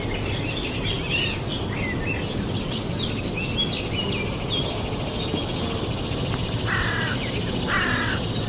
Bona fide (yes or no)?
yes